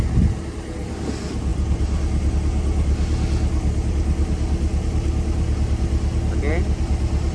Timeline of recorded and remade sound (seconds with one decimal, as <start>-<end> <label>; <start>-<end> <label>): 0.0-7.3 recorded